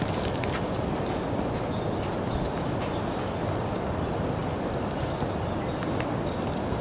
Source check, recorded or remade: recorded